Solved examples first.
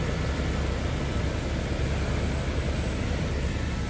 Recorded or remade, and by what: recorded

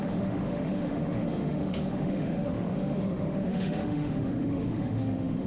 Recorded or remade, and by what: remade, autoencoder, DAC-VAE